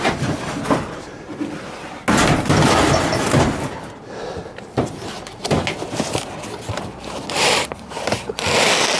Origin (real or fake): real